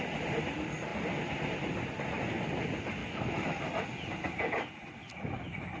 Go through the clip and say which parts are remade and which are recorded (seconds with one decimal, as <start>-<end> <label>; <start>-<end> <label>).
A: 0.0-3.0 recorded; 3.0-3.6 remade; 3.6-5.8 recorded